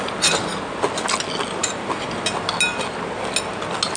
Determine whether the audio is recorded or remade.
recorded